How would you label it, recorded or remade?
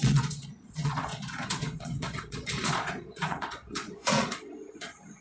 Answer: remade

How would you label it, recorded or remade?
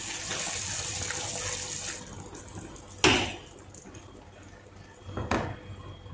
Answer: recorded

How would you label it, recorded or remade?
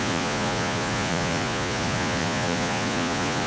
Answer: remade